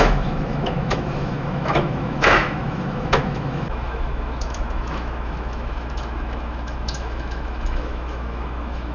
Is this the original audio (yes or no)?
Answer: no